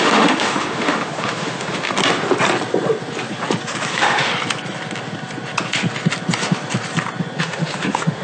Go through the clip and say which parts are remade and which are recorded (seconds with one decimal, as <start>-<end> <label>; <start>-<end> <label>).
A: 0.0-2.0 remade; 2.0-3.9 recorded; 3.9-4.3 remade; 4.3-7.4 recorded; 7.4-8.2 remade